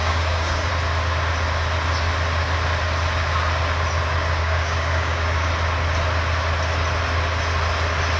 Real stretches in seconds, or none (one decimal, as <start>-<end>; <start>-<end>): 0.7-4.4; 5.5-8.2